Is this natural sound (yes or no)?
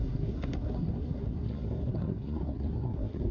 no